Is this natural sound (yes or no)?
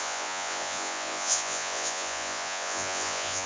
no